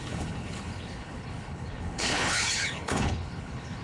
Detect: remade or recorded remade